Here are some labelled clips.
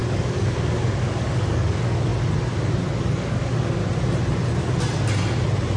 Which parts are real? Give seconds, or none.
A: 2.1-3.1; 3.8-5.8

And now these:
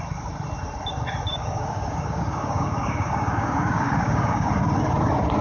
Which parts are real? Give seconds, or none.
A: 0.0-1.3; 4.5-5.4